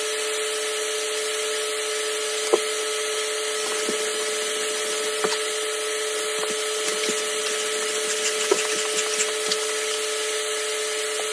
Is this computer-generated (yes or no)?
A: no